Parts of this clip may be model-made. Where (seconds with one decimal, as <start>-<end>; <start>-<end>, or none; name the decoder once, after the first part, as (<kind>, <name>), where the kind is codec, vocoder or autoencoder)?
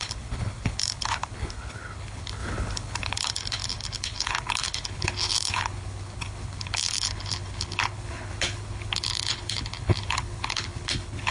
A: 0.0-11.3 (codec, HILCodec)